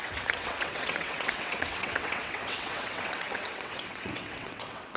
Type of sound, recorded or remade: remade